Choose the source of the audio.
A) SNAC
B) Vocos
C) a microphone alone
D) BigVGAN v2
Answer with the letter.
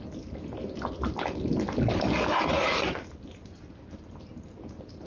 C